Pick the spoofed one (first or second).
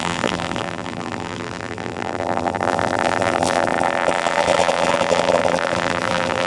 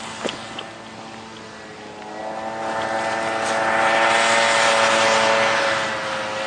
first